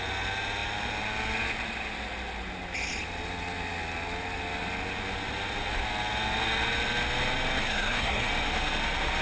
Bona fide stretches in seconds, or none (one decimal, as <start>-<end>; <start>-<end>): 0.0-7.6; 8.3-9.2